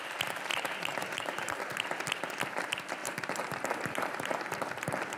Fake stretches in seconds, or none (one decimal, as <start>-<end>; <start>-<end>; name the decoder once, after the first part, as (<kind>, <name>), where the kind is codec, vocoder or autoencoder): 0.5-1.6 (vocoder, BigVGAN v2); 3.0-4.4